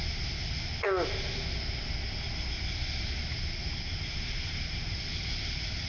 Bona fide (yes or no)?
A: yes